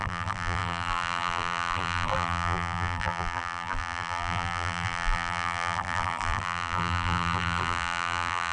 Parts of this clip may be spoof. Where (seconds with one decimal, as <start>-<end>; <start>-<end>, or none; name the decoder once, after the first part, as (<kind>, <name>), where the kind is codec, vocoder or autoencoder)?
0.0-8.5 (vocoder, BigVGAN v2)